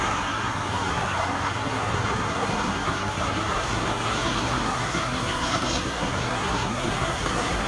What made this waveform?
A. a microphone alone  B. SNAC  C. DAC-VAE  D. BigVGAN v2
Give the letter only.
B